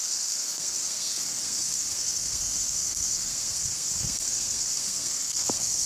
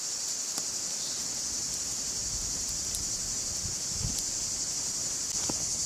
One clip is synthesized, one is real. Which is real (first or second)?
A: second